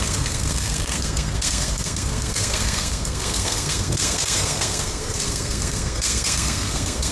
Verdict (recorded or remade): remade